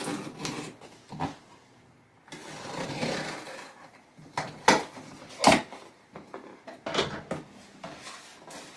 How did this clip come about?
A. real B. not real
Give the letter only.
A